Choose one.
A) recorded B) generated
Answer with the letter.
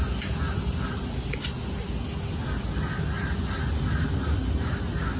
A